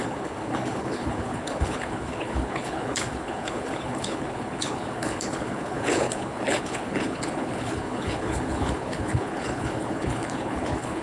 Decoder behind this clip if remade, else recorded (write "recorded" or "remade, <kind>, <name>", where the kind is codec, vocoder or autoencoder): remade, codec, HILCodec